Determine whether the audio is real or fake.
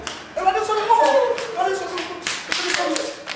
real